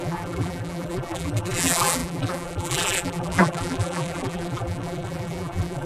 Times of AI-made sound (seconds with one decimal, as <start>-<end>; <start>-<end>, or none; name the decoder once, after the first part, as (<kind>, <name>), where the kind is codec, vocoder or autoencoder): 0.0-5.9 (vocoder, BigVGAN v2)